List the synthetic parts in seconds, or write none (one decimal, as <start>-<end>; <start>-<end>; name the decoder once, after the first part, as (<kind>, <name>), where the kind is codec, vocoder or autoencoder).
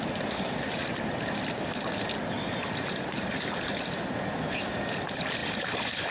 2.6-3.3 (vocoder, BigVGAN v2); 5.4-6.1